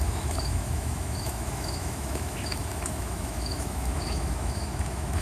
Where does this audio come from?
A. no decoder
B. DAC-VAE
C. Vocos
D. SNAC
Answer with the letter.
B